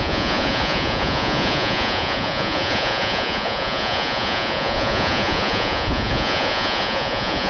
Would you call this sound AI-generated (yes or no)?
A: yes